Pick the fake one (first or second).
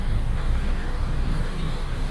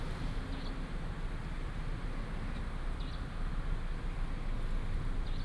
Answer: first